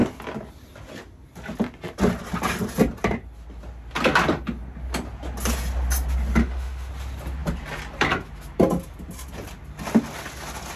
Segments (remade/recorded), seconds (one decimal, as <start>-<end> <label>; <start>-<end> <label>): 0.0-6.4 recorded; 6.4-6.9 remade; 6.9-10.8 recorded